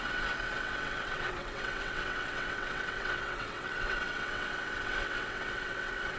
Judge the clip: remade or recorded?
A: remade